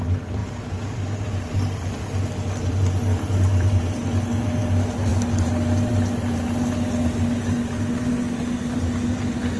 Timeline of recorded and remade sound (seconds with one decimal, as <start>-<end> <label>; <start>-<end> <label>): 0.0-9.6 recorded